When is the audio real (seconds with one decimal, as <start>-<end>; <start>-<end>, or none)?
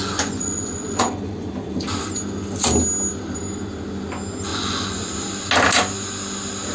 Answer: 1.5-4.5; 5.1-6.7